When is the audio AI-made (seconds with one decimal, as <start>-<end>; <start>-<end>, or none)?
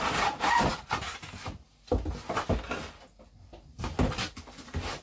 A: none